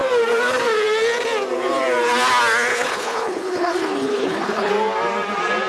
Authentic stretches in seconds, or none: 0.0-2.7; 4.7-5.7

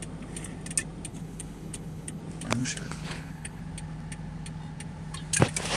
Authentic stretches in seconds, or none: 0.0-1.1; 2.2-2.6; 3.6-5.8

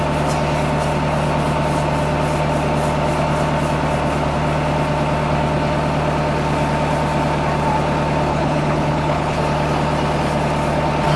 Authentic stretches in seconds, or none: 0.0-8.3; 9.4-11.2

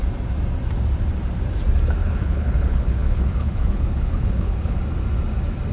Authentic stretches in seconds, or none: 0.0-2.0; 4.8-5.7

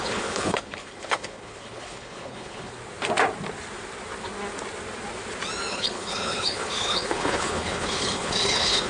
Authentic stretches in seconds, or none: 2.7-5.7